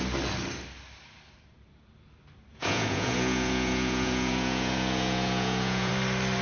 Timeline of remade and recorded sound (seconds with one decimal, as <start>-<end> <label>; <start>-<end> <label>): 0.0-2.5 recorded; 2.5-5.9 remade; 5.9-6.4 recorded